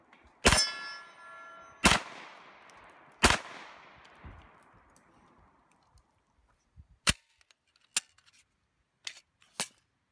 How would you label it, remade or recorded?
recorded